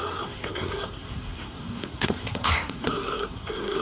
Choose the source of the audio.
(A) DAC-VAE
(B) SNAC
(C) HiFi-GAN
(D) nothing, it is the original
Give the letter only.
B